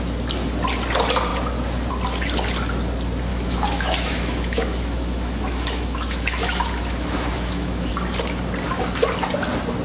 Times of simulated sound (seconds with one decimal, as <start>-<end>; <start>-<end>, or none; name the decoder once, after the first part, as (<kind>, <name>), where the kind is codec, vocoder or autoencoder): 3.3-7.9 (autoencoder, DAC-VAE)